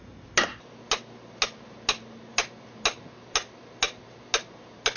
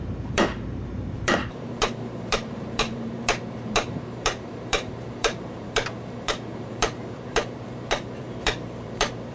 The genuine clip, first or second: first